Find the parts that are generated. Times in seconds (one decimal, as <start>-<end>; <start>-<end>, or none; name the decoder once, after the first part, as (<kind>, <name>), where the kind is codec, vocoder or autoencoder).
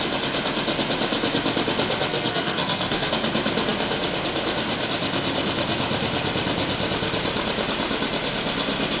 2.1-3.1 (codec, SNAC)